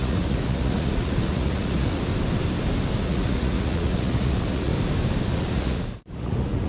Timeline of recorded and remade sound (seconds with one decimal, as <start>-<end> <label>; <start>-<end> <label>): 0.0-2.1 remade; 2.1-3.0 recorded; 3.0-4.7 remade; 4.7-5.3 recorded; 5.3-6.7 remade

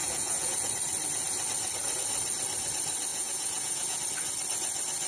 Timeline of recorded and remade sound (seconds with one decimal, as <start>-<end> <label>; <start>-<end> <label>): 0.0-0.7 remade; 0.7-3.1 recorded; 3.1-4.0 remade; 4.0-5.1 recorded

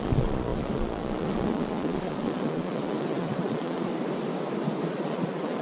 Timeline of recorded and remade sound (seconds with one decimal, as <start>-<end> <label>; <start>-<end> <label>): 0.0-3.9 remade; 3.9-4.9 recorded; 4.9-5.6 remade